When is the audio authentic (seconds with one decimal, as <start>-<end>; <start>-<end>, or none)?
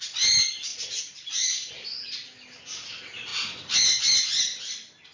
0.0-0.7; 1.7-5.1